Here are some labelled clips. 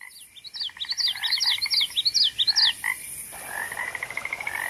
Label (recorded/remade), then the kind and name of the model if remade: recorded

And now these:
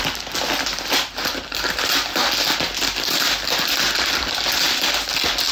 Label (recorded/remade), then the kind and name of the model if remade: recorded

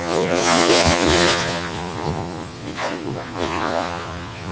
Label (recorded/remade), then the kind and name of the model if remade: remade, vocoder, Vocos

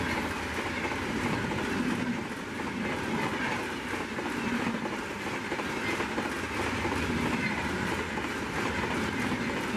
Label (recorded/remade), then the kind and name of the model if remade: recorded